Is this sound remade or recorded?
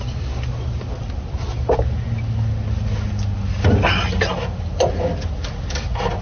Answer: recorded